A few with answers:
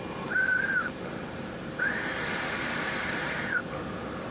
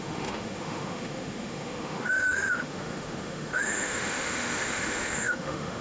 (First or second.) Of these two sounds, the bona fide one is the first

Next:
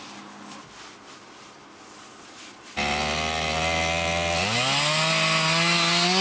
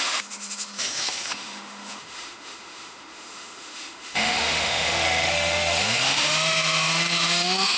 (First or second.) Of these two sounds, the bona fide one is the first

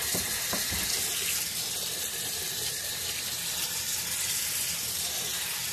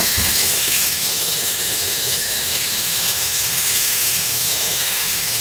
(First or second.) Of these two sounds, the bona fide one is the first